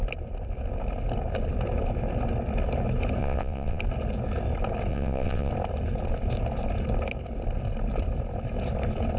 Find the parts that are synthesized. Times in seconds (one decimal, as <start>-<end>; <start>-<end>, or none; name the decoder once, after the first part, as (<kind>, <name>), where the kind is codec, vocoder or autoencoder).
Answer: 3.2-3.8 (vocoder, WaveNeXt); 4.9-5.5